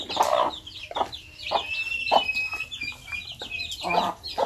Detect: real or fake real